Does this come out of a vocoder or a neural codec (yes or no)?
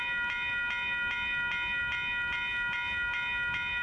no